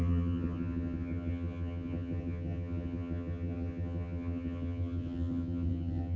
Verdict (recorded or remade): remade